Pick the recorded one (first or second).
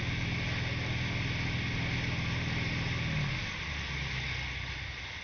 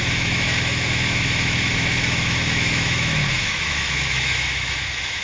first